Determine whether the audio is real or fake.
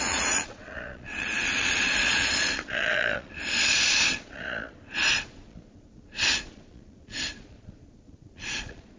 fake